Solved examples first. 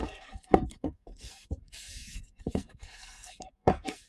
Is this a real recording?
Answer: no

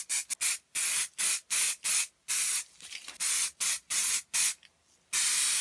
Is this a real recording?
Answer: yes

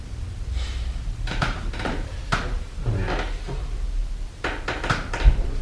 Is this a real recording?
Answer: no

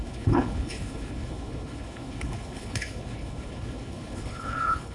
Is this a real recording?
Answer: no